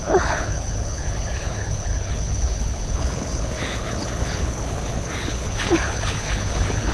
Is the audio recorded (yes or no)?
no